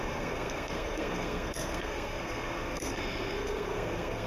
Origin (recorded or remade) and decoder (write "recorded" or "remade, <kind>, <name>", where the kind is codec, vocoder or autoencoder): remade, codec, SNAC